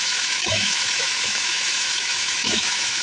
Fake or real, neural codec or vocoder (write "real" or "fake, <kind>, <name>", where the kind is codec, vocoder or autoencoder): fake, autoencoder, DAC-VAE